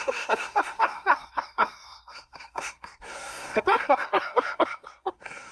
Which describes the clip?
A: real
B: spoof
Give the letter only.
B